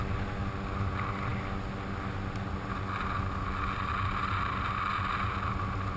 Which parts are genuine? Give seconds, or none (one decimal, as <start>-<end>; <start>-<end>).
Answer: 0.0-6.0